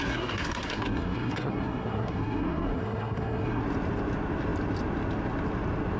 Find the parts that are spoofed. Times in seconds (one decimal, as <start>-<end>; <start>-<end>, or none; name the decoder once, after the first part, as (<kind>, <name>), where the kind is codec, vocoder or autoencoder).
0.0-3.6 (codec, SNAC)